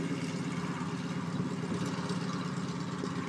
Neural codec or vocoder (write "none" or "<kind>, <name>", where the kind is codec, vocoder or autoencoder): none